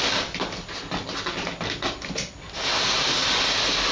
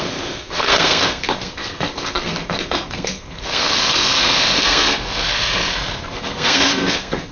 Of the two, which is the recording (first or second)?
first